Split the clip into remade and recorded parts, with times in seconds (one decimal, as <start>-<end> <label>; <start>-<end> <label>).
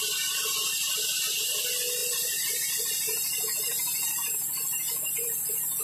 0.0-5.8 recorded